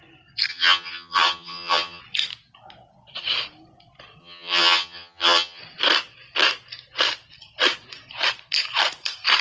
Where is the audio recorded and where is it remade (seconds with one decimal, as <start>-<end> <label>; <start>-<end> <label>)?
0.0-0.5 recorded; 0.5-2.0 remade; 2.0-4.2 recorded; 4.2-5.6 remade; 5.6-9.4 recorded